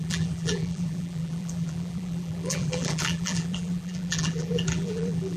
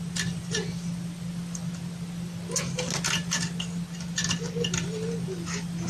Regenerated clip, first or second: first